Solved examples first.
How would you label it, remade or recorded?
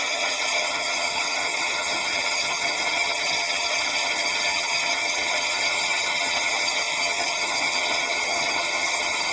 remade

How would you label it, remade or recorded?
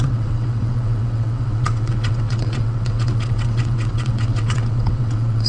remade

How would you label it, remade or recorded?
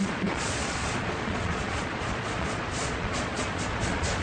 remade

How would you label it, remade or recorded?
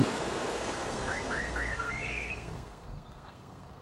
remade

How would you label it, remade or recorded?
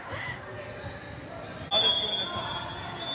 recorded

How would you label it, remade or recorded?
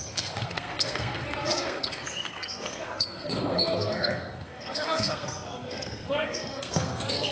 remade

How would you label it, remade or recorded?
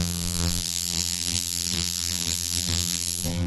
remade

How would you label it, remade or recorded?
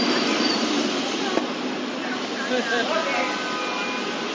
recorded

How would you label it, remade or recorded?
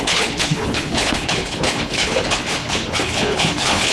remade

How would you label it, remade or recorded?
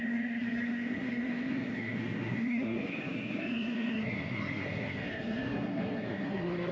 remade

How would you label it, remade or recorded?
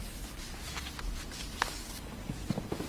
recorded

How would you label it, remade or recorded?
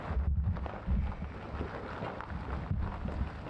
recorded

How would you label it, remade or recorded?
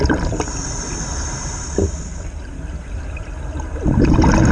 recorded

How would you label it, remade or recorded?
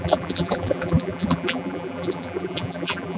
remade